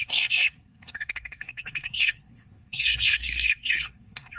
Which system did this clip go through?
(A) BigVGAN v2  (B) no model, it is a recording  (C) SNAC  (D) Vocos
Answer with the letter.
C